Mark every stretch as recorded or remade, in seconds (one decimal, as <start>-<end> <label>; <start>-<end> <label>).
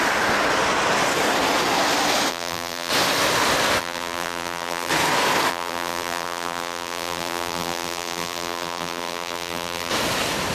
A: 0.0-2.3 recorded; 2.3-2.9 remade; 2.9-3.8 recorded; 3.8-4.9 remade; 4.9-5.5 recorded; 5.5-9.9 remade; 9.9-10.5 recorded